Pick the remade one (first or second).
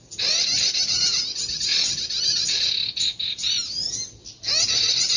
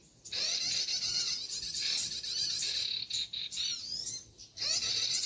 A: second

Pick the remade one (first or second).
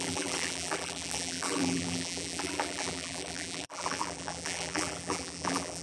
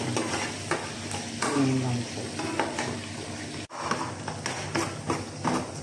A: first